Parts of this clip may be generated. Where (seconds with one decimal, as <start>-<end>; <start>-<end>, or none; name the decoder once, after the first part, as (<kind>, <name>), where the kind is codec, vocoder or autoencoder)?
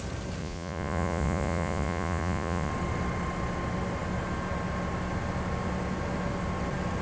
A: 0.4-2.7 (vocoder, Vocos)